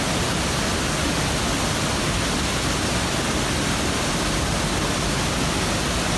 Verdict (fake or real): real